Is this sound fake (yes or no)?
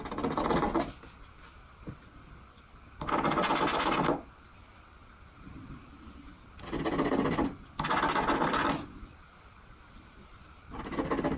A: no